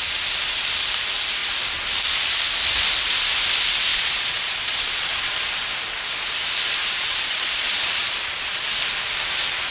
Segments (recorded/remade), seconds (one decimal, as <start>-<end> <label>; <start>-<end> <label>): 0.0-3.9 recorded; 3.9-5.3 remade; 5.3-6.8 recorded; 6.8-8.7 remade; 8.7-9.7 recorded